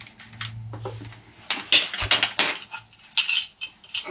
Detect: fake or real real